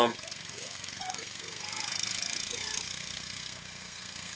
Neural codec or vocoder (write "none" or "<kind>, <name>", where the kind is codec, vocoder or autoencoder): codec, SNAC